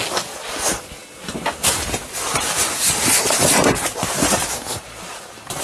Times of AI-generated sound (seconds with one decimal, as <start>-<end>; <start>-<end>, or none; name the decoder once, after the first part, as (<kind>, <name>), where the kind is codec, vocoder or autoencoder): 2.3-5.1 (vocoder, BigVGAN v2)